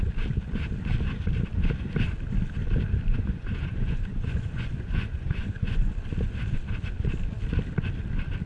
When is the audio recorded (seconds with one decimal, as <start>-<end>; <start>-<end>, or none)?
0.0-3.1; 5.9-8.5

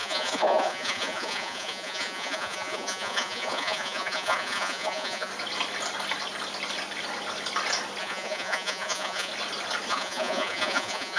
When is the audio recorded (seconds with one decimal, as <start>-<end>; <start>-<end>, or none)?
5.3-8.0; 9.3-9.9

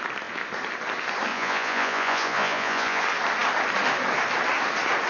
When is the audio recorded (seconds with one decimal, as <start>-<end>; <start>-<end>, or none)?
0.0-1.3; 3.0-5.1

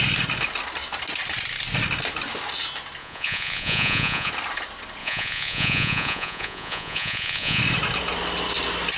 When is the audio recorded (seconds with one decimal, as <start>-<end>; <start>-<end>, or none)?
0.0-3.0; 4.3-5.0; 7.6-9.0

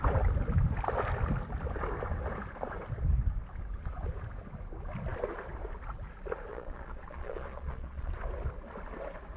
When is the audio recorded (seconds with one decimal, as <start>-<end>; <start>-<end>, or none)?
0.0-6.5; 8.1-9.4

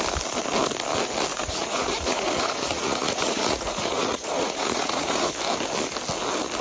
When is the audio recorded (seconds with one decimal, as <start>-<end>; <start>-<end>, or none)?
0.0-1.3; 5.3-6.6

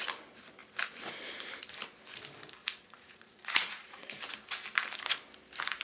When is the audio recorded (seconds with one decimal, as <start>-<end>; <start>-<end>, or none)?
0.0-2.6; 4.2-5.8

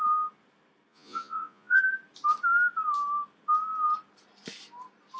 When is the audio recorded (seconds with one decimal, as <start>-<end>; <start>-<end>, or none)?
0.0-0.9; 1.8-5.2